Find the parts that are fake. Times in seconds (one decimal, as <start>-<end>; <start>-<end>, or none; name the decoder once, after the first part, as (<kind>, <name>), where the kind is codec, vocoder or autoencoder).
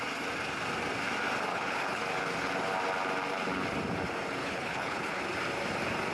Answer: 1.5-2.0 (codec, HILCodec); 4.4-5.2